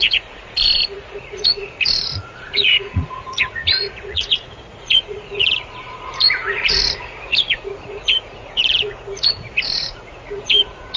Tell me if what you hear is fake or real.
fake